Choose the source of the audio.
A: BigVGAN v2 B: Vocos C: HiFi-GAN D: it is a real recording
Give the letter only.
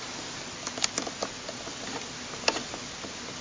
D